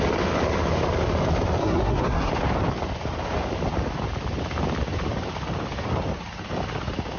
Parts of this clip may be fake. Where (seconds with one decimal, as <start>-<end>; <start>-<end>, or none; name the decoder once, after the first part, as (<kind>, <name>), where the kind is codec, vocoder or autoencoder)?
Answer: 1.6-2.3 (codec, SNAC)